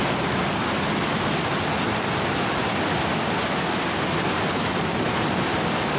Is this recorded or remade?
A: recorded